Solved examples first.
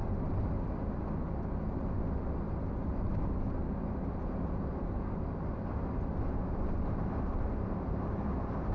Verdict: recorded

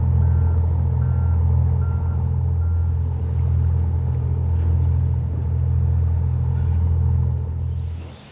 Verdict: recorded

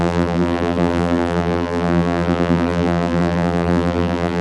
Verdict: remade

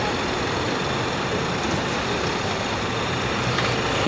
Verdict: recorded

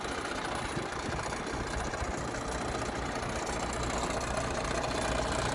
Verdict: recorded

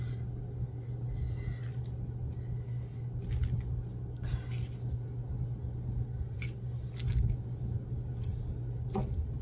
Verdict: recorded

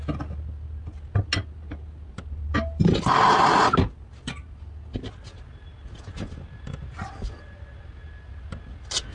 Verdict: recorded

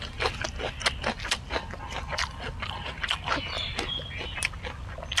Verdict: recorded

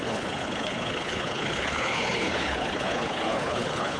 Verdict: remade